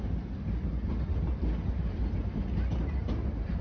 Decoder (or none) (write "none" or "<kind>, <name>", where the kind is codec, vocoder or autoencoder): none